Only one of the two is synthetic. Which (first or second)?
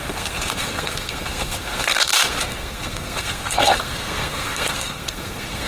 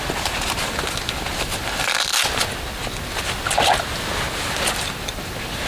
first